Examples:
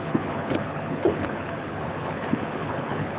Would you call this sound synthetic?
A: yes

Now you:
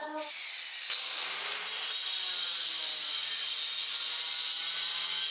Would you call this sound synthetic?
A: no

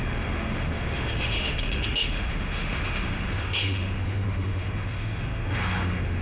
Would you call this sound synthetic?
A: yes